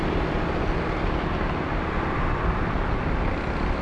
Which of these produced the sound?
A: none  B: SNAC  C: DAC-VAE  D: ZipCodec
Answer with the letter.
A